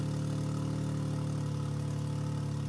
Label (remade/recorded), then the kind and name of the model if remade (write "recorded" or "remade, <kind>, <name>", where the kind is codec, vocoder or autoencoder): recorded